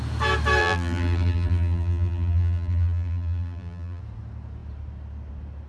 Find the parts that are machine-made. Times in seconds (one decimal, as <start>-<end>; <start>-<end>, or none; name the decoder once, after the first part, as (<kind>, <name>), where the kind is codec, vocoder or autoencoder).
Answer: 0.6-4.0 (vocoder, BigVGAN v2)